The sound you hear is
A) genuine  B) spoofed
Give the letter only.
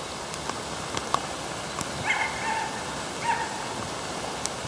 A